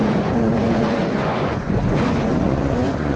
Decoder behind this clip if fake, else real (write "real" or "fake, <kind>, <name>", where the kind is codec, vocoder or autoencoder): fake, vocoder, Vocos